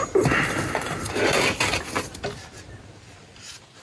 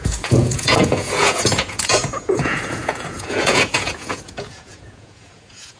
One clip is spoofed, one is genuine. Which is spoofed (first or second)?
second